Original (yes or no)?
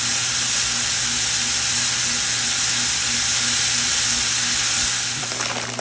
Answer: yes